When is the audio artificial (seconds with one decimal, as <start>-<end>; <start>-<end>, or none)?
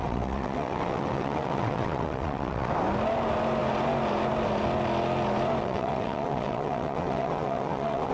0.0-2.7; 5.6-8.1